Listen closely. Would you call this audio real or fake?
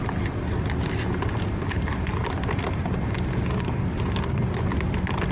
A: real